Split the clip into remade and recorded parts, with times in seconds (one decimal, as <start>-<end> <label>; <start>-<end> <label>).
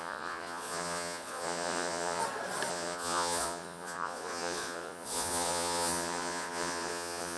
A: 0.0-2.2 remade; 2.2-2.7 recorded; 2.7-7.4 remade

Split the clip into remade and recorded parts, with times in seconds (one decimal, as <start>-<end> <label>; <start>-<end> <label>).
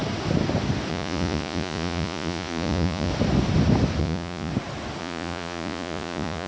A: 0.0-0.9 recorded; 0.9-3.1 remade; 3.1-4.0 recorded; 4.0-4.5 remade; 4.5-5.0 recorded; 5.0-6.5 remade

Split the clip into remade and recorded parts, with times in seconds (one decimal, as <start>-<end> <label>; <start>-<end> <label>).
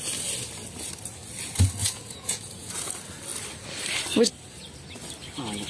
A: 0.0-1.8 recorded; 1.8-2.7 remade; 2.7-5.7 recorded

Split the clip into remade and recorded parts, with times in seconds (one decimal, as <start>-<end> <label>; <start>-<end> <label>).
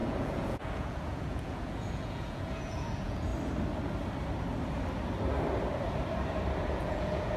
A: 0.0-3.3 remade; 3.3-6.7 recorded; 6.7-7.4 remade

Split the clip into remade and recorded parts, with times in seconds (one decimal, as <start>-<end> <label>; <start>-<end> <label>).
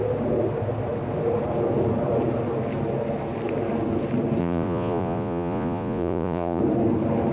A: 0.0-4.4 recorded; 4.4-6.6 remade; 6.6-7.3 recorded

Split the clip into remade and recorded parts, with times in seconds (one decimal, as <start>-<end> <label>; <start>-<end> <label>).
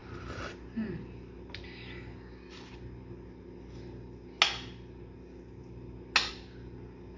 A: 0.0-7.2 recorded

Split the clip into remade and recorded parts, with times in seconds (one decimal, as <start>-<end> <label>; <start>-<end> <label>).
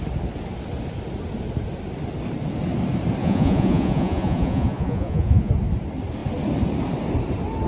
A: 0.0-3.2 recorded; 3.2-5.5 remade; 5.5-7.7 recorded